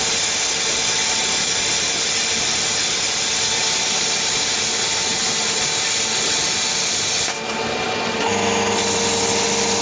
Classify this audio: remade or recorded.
recorded